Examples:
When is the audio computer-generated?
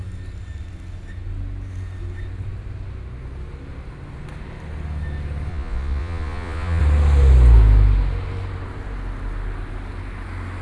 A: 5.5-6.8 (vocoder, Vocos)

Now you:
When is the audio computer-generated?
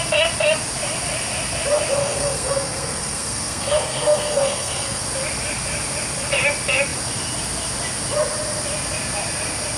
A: 2.0-5.0 (codec, SNAC)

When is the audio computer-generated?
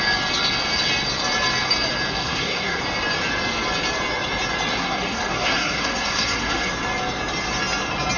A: 2.1-2.8 (codec, SNAC); 4.8-6.7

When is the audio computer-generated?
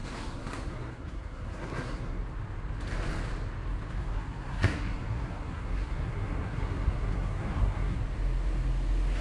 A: 0.0-2.2 (codec, SNAC); 4.0-8.0